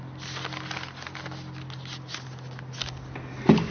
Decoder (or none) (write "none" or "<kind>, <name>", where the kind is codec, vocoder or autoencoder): none